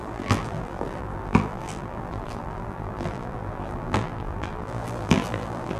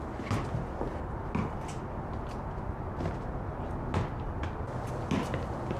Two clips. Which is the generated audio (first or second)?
first